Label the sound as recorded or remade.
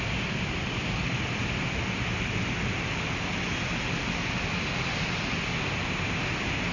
recorded